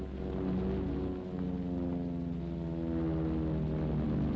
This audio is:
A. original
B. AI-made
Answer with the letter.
A